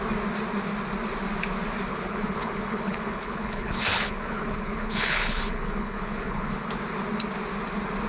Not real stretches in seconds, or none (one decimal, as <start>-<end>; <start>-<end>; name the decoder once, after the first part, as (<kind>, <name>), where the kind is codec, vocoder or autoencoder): 1.9-6.7 (codec, HILCodec)